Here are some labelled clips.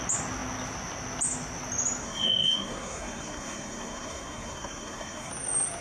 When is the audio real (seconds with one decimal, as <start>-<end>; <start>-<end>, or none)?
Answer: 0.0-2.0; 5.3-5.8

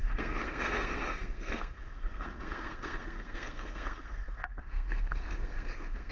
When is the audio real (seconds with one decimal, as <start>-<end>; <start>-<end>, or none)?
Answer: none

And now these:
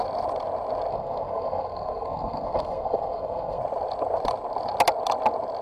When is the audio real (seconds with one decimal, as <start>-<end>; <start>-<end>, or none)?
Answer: 0.0-0.9; 3.6-5.6

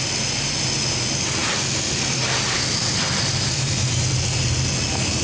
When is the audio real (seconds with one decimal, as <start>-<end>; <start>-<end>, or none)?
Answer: 0.0-5.2

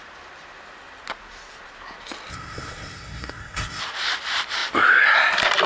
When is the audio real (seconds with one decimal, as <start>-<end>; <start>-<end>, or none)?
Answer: 0.0-2.3; 3.8-5.7

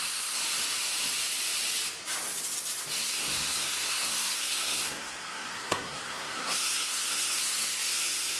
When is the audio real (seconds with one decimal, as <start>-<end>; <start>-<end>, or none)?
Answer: 0.4-3.0